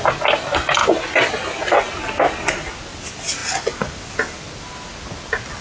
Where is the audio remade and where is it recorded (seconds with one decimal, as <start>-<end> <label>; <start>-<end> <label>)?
0.0-5.6 recorded